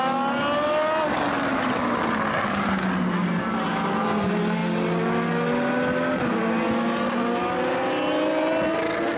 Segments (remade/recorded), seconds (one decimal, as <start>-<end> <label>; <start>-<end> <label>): 0.0-9.2 recorded